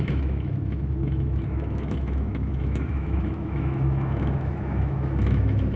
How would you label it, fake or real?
fake